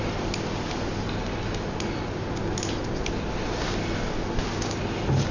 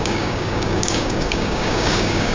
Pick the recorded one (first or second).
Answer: first